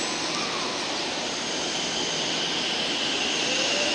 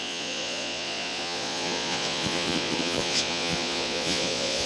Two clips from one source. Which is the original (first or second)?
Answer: first